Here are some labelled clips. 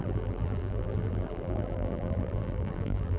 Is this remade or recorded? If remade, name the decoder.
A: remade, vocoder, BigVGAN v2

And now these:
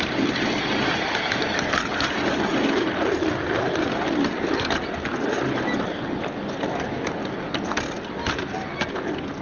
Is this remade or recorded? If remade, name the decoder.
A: recorded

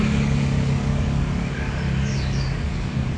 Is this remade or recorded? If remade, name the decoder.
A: remade, codec, DAC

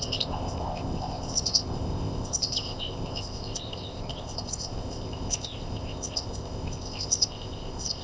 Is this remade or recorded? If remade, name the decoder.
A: remade, codec, ZipCodec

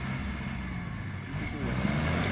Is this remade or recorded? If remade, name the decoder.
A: recorded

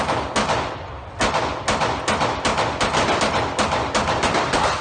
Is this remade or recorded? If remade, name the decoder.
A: recorded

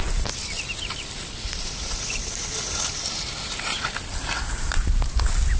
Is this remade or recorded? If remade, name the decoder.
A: recorded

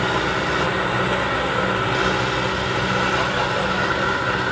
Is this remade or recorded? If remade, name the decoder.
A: recorded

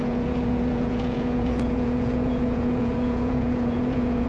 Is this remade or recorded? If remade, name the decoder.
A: remade, vocoder, Vocos